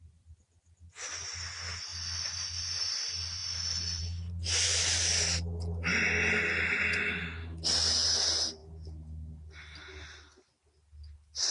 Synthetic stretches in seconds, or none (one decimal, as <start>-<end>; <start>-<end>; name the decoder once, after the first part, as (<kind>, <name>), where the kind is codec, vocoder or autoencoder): none